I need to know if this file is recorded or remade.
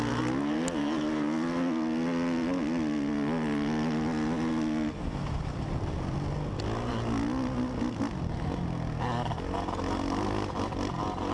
recorded